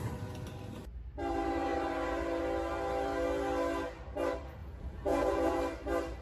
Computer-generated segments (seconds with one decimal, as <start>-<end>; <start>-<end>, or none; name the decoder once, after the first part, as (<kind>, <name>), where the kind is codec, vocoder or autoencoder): 4.6-5.6 (vocoder, Vocos)